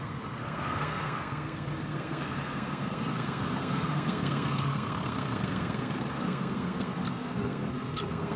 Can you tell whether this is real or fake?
fake